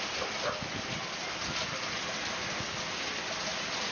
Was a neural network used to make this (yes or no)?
no